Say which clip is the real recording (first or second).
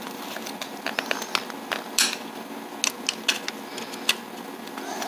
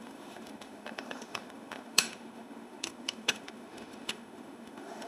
first